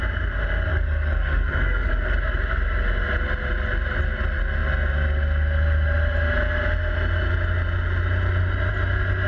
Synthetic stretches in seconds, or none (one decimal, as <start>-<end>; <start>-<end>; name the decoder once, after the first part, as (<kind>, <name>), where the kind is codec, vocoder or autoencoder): 0.7-1.9 (codec, DAC)